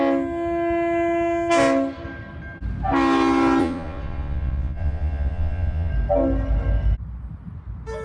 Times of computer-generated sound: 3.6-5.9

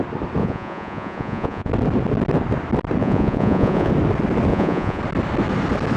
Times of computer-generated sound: 0.4-1.7; 3.0-3.9; 4.5-5.0

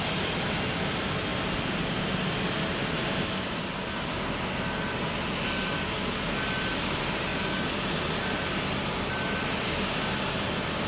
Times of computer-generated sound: none

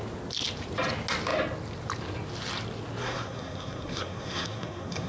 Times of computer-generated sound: 3.0-5.1

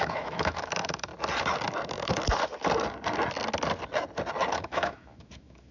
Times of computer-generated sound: 0.0-1.1; 4.5-5.7